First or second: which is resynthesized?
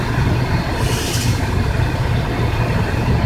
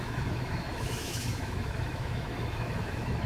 second